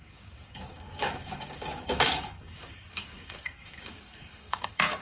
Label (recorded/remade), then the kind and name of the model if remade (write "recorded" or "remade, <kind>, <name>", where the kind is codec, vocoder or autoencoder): remade, codec, DAC